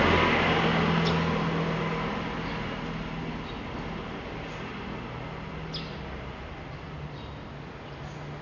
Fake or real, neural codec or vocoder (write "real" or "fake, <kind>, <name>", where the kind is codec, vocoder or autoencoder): real